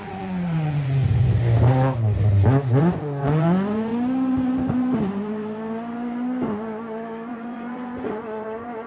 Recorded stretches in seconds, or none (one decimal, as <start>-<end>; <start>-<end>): 1.0-2.8; 3.9-7.3